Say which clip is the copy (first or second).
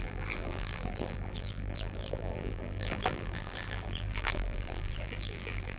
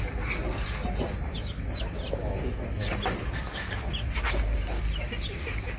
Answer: first